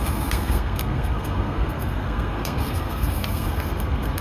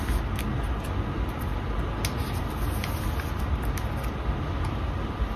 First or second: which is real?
second